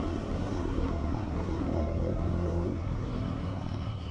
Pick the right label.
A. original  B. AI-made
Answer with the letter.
B